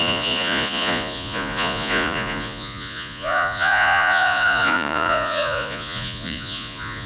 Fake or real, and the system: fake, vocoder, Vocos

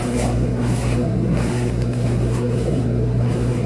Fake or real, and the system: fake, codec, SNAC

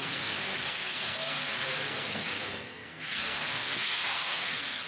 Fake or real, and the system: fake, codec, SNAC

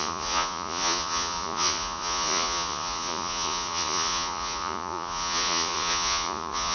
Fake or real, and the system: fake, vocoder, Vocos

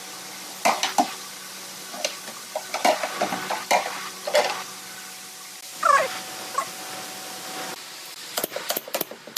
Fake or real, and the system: real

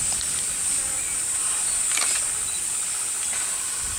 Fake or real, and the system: real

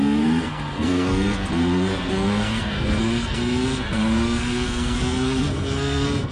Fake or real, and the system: fake, codec, SNAC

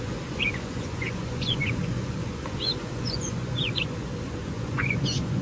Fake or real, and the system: fake, vocoder, Vocos